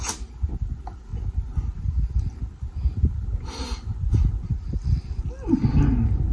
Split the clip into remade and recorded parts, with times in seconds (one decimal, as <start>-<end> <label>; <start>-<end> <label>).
0.0-1.1 recorded; 1.1-1.9 remade; 1.9-3.9 recorded; 3.9-4.6 remade; 4.6-6.3 recorded